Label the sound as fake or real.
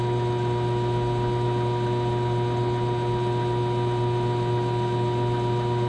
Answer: real